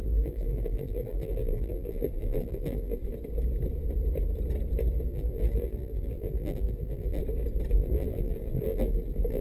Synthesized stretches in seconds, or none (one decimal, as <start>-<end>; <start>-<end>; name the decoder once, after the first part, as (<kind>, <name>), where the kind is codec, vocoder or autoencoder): 0.0-3.0 (vocoder, BigVGAN v2); 5.1-7.2; 7.7-9.4